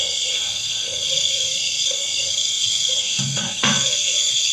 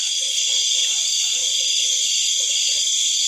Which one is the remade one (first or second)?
first